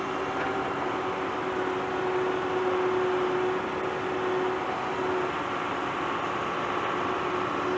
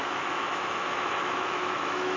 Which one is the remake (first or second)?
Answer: second